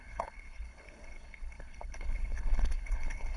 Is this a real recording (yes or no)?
no